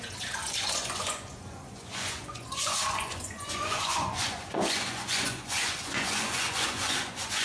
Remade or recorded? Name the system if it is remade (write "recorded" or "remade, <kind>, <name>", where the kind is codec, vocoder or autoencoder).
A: remade, vocoder, Vocos